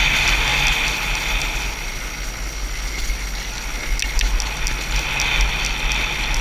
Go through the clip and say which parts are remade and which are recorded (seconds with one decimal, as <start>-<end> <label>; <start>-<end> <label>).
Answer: 0.0-6.4 recorded